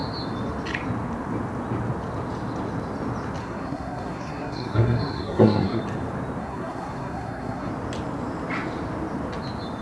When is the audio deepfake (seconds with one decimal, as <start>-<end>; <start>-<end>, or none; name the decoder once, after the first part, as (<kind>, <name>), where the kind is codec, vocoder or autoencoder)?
3.4-5.8 (codec, SNAC); 6.4-7.7